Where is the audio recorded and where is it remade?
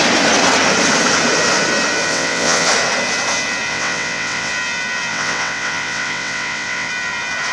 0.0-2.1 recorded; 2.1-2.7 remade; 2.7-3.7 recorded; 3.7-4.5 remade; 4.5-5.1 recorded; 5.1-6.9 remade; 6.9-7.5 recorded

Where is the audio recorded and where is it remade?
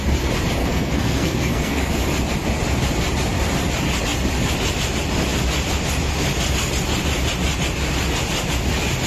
0.0-0.6 recorded; 0.6-1.9 remade; 1.9-9.1 recorded